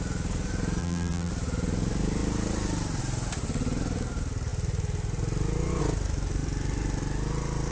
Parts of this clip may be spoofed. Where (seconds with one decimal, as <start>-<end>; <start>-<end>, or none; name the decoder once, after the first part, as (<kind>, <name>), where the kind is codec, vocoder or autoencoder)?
0.8-1.3 (vocoder, BigVGAN v2)